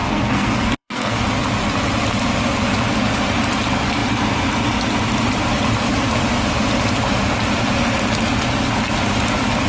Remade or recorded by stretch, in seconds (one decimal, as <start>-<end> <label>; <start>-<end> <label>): 0.0-1.2 remade; 1.2-9.7 recorded